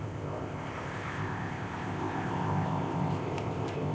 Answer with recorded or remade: remade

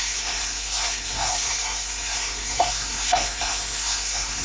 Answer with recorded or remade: remade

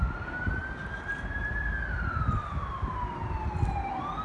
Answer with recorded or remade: recorded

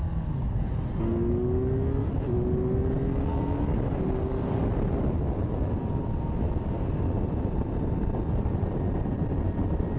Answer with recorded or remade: recorded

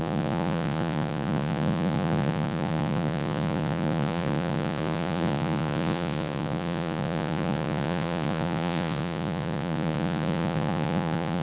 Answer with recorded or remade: remade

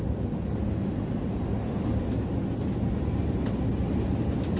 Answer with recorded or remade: recorded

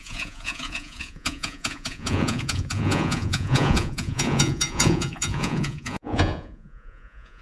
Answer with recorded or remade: remade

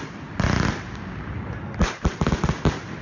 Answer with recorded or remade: recorded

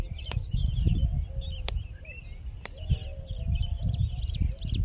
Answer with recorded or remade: recorded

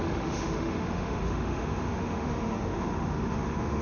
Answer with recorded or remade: remade